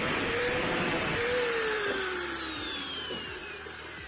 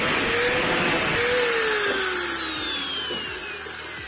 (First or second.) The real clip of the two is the second